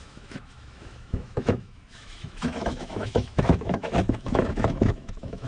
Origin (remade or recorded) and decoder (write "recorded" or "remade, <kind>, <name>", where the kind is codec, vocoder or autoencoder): remade, autoencoder, DAC-VAE